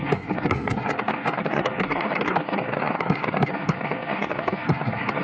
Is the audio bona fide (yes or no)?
no